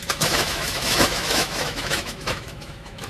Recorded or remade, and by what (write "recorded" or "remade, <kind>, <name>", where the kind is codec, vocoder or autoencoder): remade, autoencoder, DAC-VAE